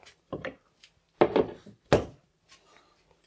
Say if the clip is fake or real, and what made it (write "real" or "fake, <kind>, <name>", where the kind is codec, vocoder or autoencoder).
real